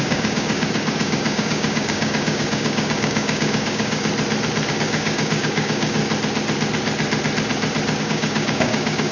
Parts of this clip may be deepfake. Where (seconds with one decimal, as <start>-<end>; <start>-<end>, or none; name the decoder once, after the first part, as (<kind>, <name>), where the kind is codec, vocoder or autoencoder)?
0.0-4.1 (codec, DAC); 4.7-6.0; 8.0-9.1